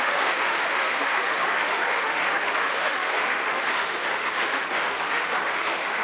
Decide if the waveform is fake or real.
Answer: fake